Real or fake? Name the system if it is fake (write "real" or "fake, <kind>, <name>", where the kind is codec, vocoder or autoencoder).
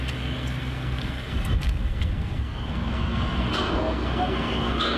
fake, codec, SNAC